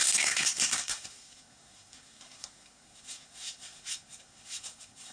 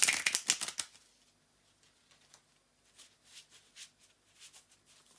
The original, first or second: second